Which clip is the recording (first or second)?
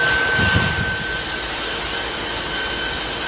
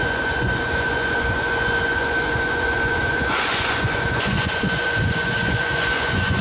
first